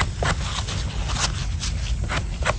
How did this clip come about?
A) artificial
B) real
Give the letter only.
B